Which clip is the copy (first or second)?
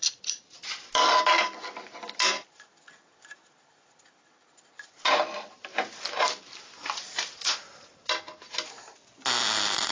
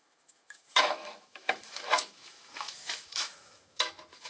second